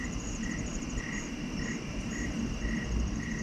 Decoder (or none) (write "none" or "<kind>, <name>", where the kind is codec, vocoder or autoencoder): vocoder, BigVGAN v2